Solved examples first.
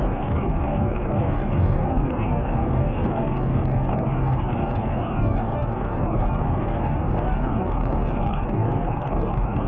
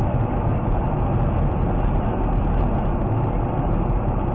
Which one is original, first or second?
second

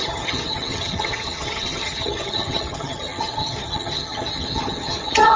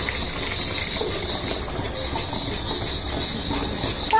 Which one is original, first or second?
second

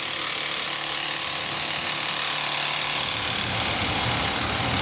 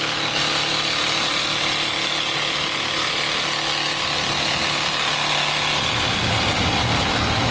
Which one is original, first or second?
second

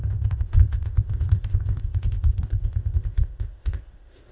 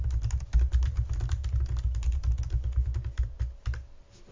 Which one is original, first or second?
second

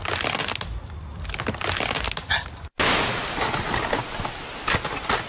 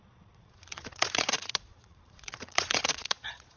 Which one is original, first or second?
first